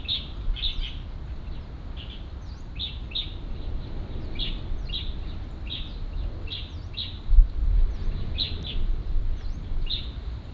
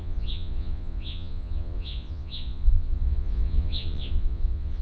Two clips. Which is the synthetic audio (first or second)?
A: second